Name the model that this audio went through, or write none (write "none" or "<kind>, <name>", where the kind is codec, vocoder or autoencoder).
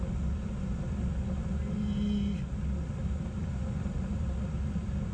none